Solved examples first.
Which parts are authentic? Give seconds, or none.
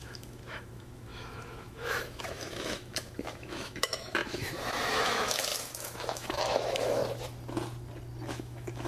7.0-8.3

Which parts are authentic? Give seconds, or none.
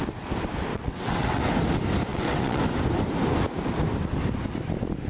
0.0-0.7; 1.4-2.1; 2.6-5.1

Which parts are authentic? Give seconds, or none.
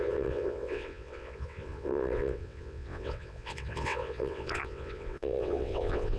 none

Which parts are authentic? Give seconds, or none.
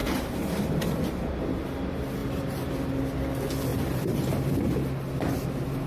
1.4-2.2; 2.7-3.7; 4.5-5.9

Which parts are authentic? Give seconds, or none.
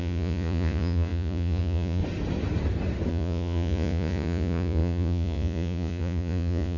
2.0-3.1